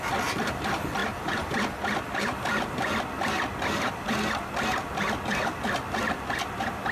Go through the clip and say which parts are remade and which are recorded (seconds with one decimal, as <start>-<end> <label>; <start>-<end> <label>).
0.0-6.9 recorded